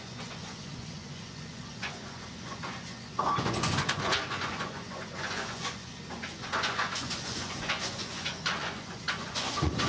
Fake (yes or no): yes